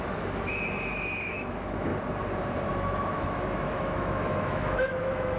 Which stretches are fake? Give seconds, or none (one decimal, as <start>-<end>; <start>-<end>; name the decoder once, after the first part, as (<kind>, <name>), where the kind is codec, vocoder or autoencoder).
0.0-1.9 (autoencoder, DAC-VAE); 2.7-5.4